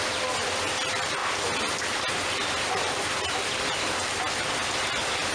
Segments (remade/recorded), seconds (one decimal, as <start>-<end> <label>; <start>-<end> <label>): 0.0-5.3 recorded